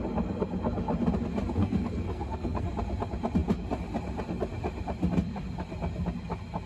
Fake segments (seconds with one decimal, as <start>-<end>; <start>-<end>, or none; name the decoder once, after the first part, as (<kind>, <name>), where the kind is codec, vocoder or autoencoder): 1.6-2.7 (codec, SNAC)